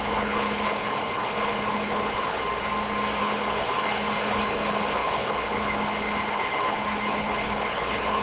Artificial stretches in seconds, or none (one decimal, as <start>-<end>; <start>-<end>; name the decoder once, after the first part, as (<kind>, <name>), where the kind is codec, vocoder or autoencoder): 0.0-2.4 (codec, HILCodec); 3.2-8.2

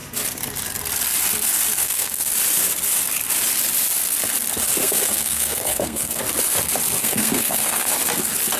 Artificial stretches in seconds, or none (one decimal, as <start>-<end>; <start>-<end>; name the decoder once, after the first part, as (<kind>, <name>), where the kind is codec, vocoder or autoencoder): 1.8-2.3 (codec, SNAC); 4.8-6.2; 7.0-7.9